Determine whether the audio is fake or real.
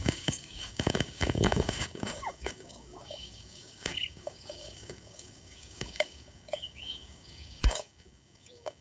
fake